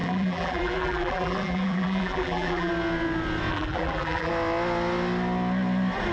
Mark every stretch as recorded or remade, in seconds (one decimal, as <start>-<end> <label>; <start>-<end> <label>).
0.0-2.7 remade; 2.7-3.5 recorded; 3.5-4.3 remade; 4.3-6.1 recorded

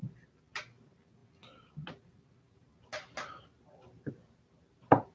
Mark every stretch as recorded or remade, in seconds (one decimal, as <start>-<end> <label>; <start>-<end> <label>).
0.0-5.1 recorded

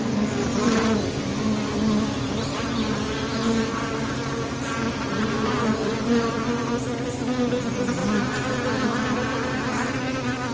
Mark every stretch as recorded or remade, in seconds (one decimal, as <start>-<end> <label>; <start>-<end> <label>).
0.0-10.5 recorded